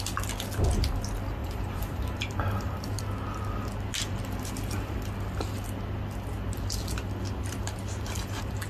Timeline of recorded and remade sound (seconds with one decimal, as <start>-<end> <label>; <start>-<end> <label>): 0.0-1.4 recorded; 1.4-3.0 remade; 3.0-8.7 recorded